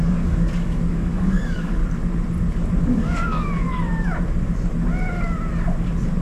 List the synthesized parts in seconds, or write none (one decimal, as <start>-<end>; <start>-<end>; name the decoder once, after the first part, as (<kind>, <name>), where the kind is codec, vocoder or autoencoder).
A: 0.0-1.8 (codec, DAC); 2.8-3.7